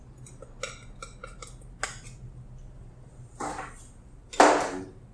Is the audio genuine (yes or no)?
yes